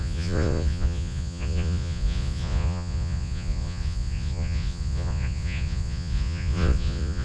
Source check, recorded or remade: remade